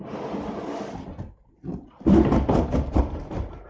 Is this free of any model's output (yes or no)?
yes